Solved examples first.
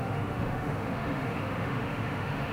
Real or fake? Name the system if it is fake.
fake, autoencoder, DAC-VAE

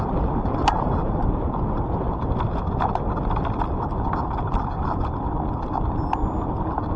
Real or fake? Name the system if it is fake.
real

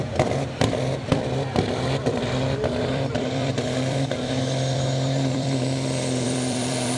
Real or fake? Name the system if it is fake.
fake, vocoder, BigVGAN v2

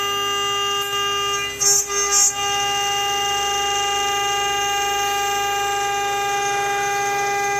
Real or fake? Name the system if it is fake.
real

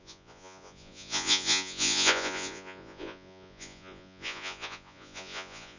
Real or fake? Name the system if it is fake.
fake, vocoder, Vocos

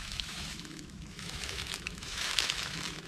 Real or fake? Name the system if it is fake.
fake, autoencoder, DAC-VAE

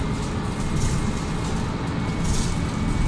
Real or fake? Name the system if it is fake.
real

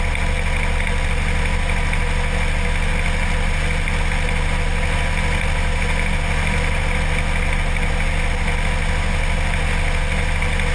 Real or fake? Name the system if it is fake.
real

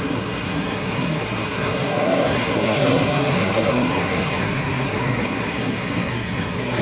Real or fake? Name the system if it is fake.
fake, codec, SNAC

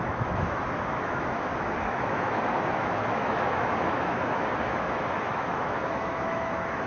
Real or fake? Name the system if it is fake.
fake, autoencoder, DAC-VAE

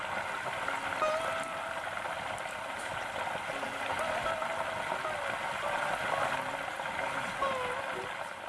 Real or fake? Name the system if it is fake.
real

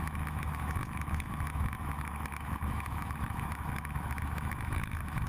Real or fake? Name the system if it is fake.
fake, autoencoder, DAC-VAE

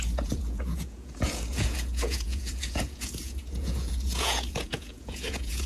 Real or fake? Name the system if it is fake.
fake, vocoder, Vocos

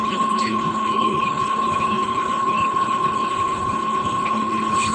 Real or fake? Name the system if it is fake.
fake, codec, HILCodec